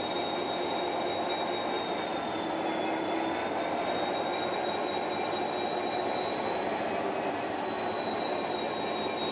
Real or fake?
real